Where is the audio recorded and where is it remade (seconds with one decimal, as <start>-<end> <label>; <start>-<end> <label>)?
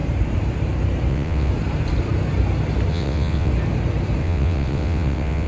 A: 0.0-1.1 recorded; 1.1-1.5 remade; 1.5-2.9 recorded; 2.9-3.5 remade; 3.5-4.2 recorded; 4.2-5.5 remade